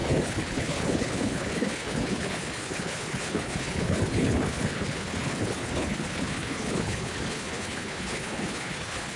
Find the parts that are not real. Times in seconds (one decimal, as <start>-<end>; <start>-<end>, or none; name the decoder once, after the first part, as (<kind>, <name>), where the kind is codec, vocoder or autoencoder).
0.0-9.2 (codec, HILCodec)

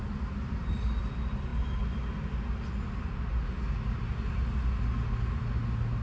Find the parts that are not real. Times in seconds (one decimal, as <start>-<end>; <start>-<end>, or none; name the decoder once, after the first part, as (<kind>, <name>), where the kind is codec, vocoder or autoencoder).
none